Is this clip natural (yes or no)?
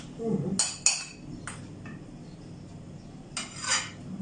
yes